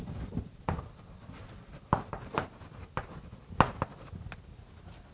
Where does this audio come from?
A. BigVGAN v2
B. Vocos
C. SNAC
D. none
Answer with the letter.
D